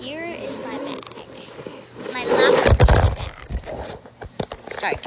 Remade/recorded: recorded